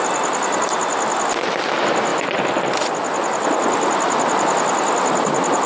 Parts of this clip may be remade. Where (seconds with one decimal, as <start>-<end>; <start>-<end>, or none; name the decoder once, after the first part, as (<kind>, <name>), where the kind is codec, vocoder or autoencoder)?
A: none